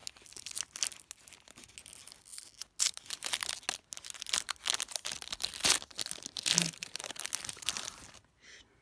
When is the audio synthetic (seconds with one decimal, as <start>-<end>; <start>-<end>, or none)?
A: none